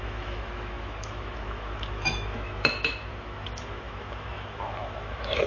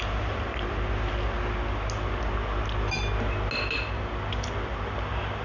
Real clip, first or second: second